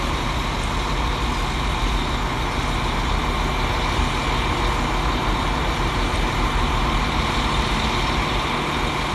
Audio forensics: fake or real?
real